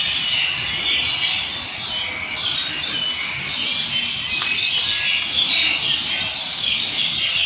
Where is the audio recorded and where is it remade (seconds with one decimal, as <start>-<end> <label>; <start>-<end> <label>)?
0.0-6.5 recorded; 6.5-7.1 remade; 7.1-7.5 recorded